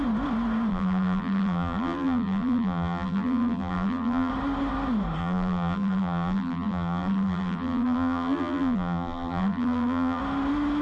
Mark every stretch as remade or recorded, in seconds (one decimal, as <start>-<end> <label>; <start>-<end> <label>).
0.0-0.7 recorded; 0.7-4.3 remade; 4.3-5.2 recorded; 5.2-10.2 remade; 10.2-10.8 recorded